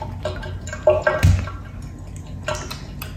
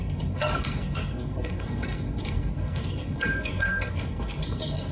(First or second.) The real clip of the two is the first